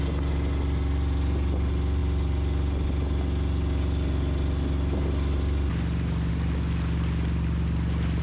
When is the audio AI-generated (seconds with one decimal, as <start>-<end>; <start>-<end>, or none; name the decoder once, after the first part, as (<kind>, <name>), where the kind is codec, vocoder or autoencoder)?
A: none